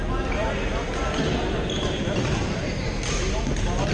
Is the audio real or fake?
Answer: real